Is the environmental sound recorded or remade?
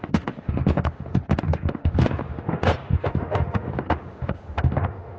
remade